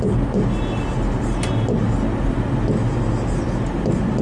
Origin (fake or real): real